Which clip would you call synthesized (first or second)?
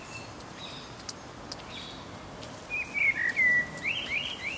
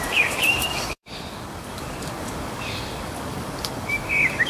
second